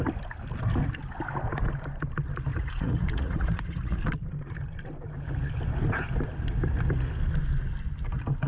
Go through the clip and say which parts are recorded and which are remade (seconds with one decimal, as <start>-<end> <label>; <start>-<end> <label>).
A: 0.0-2.5 recorded; 2.5-4.0 remade; 4.0-8.5 recorded

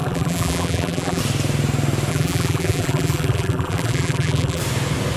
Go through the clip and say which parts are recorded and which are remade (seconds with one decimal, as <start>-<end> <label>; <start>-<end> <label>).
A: 0.0-1.2 remade; 1.2-2.1 recorded; 2.1-4.6 remade; 4.6-5.2 recorded

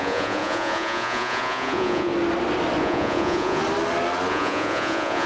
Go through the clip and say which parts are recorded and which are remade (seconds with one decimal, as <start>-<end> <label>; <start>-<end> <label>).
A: 0.0-2.1 remade; 2.1-2.8 recorded; 2.8-3.6 remade; 3.6-4.3 recorded; 4.3-5.3 remade

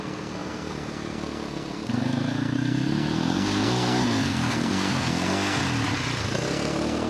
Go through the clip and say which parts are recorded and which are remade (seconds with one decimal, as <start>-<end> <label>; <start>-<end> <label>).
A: 0.0-5.6 remade; 5.6-6.2 recorded; 6.2-7.1 remade

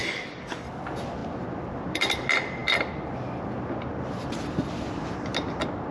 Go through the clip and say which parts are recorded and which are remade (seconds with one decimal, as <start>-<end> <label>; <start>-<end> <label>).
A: 0.0-0.7 remade; 0.7-5.9 recorded

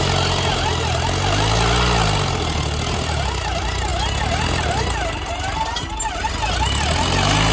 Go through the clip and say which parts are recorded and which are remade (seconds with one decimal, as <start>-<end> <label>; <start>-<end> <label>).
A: 0.0-7.5 recorded

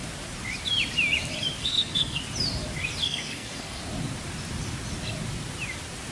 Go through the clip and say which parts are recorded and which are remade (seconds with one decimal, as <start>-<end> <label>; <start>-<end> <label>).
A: 0.0-1.6 recorded; 1.6-2.2 remade; 2.2-3.0 recorded; 3.0-3.8 remade; 3.8-6.1 recorded